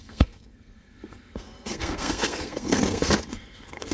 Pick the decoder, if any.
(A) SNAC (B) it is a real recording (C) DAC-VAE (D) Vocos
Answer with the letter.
A